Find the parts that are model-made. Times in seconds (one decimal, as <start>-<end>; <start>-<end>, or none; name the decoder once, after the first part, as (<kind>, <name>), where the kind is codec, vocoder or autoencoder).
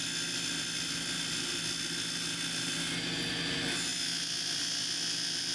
none